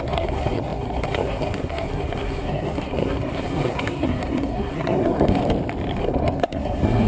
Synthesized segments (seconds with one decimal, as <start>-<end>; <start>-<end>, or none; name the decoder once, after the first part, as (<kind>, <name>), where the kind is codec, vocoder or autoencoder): 0.0-5.4 (codec, SNAC); 6.0-7.1